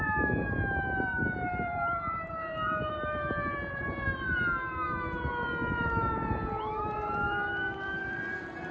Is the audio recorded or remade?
remade